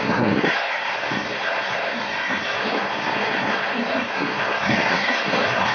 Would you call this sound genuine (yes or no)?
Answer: no